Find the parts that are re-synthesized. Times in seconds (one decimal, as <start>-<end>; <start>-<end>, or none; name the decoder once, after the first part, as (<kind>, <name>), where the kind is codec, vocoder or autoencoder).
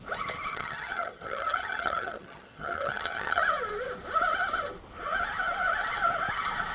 0.5-3.4 (vocoder, HiFi-GAN)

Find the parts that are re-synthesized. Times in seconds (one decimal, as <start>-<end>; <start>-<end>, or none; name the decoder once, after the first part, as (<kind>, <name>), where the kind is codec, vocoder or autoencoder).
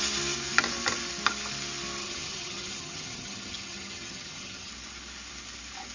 2.0-4.7 (vocoder, HiFi-GAN)